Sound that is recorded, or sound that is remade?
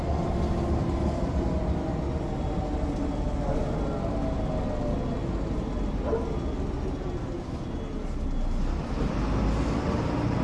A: recorded